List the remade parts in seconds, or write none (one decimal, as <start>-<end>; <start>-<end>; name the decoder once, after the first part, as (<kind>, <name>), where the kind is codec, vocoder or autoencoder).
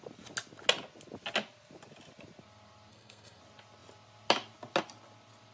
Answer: 2.9-3.4 (codec, SNAC)